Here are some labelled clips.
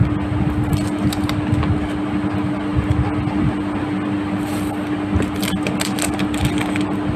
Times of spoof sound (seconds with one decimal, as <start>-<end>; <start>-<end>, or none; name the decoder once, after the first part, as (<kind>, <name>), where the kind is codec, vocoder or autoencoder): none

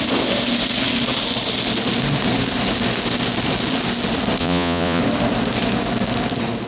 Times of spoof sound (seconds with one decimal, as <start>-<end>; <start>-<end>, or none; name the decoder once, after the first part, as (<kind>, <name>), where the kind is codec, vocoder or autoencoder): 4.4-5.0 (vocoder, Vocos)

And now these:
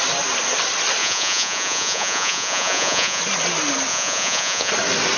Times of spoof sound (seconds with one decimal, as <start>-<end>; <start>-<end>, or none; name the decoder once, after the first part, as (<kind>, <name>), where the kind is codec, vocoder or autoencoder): 1.0-3.2 (vocoder, Vocos); 3.9-4.7